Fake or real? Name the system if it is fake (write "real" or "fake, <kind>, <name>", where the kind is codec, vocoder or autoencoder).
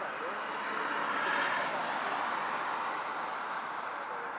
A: fake, vocoder, BigVGAN v2